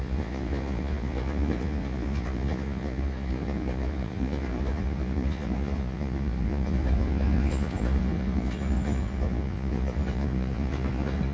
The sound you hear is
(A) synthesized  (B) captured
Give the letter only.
A